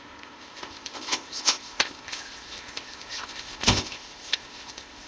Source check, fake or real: fake